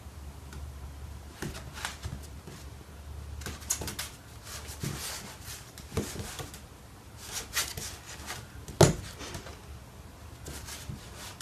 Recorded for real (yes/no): yes